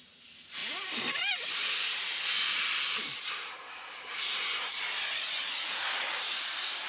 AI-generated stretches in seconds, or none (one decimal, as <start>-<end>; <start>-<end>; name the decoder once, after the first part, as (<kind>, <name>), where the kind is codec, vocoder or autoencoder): 0.6-4.7 (vocoder, BigVGAN v2)